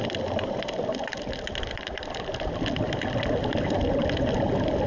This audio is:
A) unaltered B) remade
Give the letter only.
A